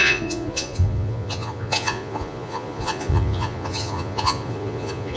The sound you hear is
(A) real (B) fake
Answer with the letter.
B